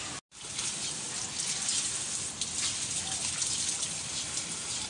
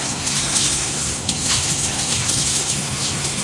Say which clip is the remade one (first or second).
second